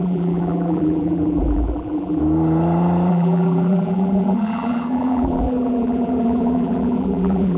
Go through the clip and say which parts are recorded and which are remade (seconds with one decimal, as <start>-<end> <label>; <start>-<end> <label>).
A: 0.0-2.2 remade; 2.2-3.1 recorded; 3.1-7.6 remade